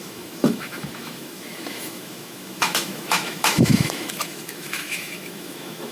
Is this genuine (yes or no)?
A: no